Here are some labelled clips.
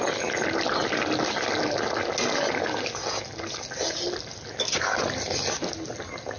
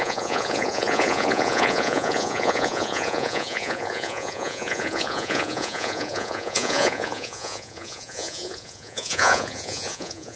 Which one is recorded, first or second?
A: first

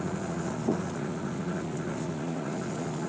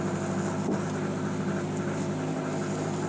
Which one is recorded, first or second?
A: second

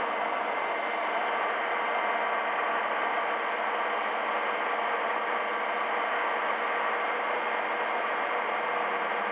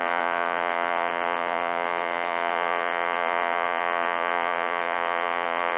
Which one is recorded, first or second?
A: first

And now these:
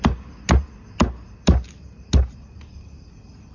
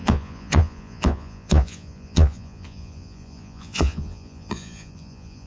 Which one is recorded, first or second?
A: first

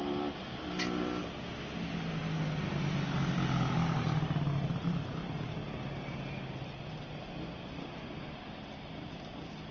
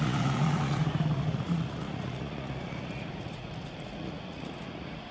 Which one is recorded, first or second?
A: first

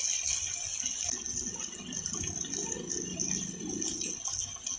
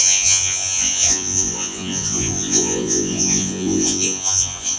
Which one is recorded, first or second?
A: first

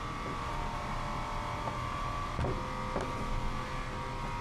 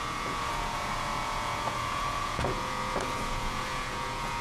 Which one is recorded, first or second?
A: first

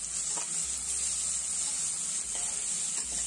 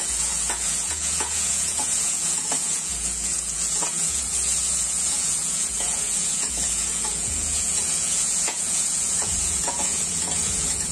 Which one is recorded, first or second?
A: first